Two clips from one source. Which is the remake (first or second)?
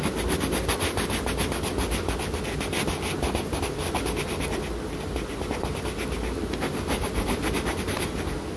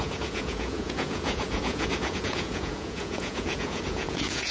second